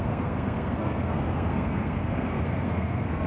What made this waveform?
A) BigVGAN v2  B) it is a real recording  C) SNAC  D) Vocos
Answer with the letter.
C